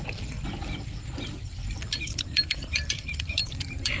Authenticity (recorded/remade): remade